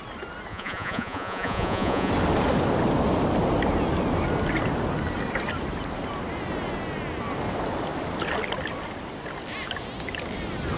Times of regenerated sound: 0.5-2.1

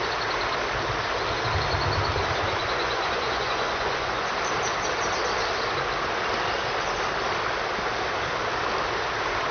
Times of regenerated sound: 2.6-4.3

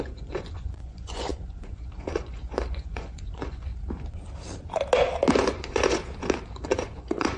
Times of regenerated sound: 0.0-3.7; 5.3-6.0; 6.5-7.4

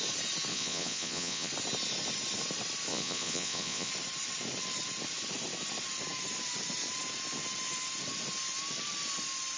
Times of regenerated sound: 0.5-1.5; 2.9-3.9

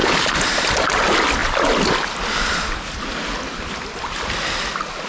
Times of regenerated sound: none

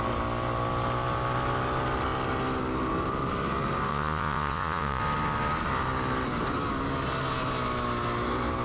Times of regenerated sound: 3.9-5.0

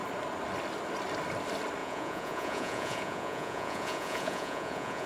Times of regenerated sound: 1.8-5.1

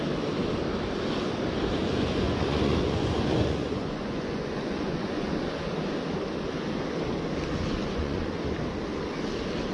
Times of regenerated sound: 1.8-5.3; 7.8-8.4